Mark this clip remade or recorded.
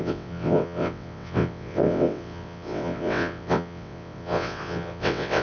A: remade